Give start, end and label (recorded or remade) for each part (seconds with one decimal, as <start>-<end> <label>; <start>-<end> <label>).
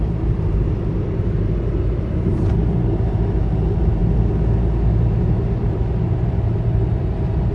0.0-4.0 remade; 4.0-4.9 recorded; 4.9-7.5 remade